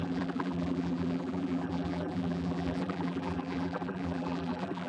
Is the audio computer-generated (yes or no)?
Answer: yes